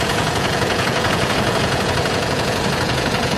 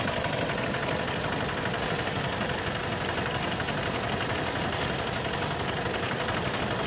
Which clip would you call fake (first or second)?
first